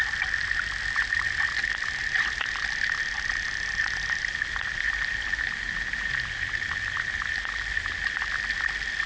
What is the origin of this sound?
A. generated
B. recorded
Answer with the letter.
B